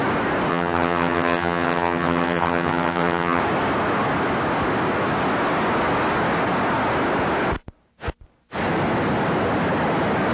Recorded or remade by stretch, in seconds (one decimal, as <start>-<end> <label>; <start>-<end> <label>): 0.0-0.5 recorded; 0.5-3.4 remade; 3.4-10.3 recorded